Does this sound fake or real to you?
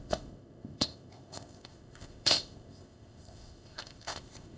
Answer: fake